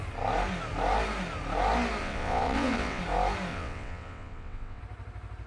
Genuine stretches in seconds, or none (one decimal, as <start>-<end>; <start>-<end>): 0.0-2.0; 3.0-3.5; 4.8-5.5